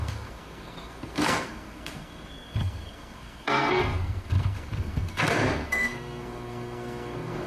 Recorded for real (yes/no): no